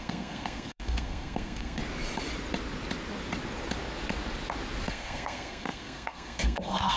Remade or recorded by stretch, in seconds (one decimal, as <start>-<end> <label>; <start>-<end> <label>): 0.0-1.8 remade; 1.8-4.9 recorded; 4.9-7.0 remade